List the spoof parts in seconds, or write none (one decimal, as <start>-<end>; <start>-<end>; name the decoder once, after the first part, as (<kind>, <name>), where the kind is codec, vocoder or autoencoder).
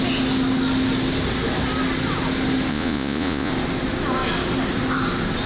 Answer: 2.7-3.5 (vocoder, Vocos)